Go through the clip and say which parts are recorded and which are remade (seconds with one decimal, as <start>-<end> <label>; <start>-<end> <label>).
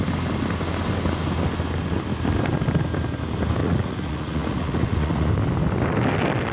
0.0-3.6 recorded; 3.6-5.3 remade; 5.3-6.5 recorded